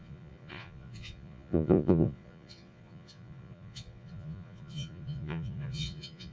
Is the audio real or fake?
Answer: fake